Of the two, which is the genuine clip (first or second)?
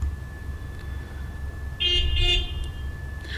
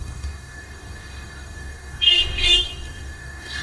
first